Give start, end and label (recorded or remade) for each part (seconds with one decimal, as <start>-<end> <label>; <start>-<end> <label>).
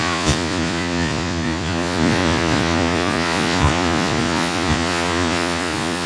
0.0-6.1 remade